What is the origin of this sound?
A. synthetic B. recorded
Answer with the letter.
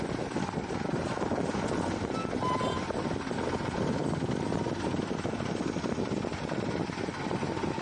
B